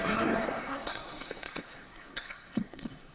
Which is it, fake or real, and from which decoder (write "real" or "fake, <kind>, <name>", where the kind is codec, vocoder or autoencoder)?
fake, codec, SNAC